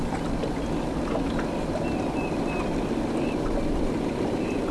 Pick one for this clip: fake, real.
real